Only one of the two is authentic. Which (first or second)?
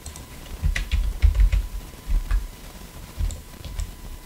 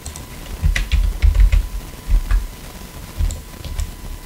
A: second